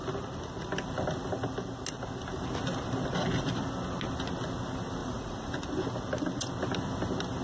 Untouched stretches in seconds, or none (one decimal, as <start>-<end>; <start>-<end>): 0.0-5.0; 5.5-7.4